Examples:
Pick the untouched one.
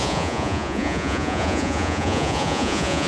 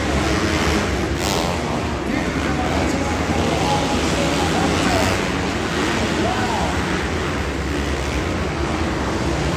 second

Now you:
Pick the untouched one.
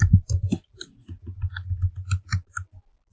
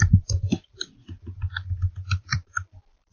first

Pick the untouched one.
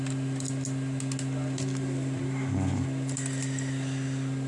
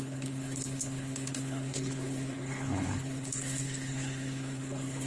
first